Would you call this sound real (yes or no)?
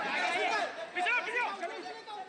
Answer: yes